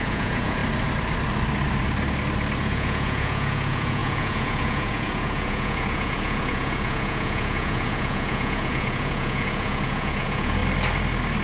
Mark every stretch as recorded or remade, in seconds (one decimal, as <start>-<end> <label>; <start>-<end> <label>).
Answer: 0.0-0.6 remade; 0.6-2.6 recorded; 2.6-10.6 remade; 10.6-11.4 recorded